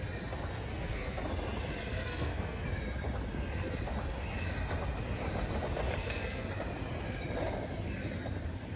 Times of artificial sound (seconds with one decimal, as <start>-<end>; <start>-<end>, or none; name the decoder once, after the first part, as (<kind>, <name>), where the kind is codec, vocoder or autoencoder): 0.7-1.2 (codec, SNAC); 1.9-2.6; 6.0-6.5